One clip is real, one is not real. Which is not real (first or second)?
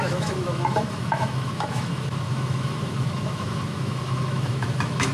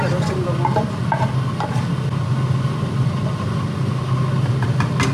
first